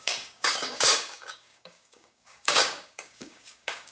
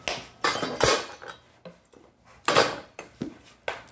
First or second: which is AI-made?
first